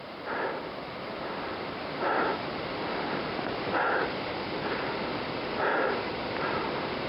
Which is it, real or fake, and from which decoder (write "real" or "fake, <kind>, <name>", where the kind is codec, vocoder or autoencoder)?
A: fake, vocoder, BigVGAN v2